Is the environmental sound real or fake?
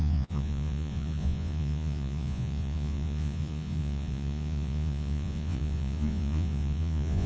fake